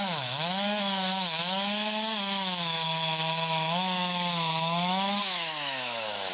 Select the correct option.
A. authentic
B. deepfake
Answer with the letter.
B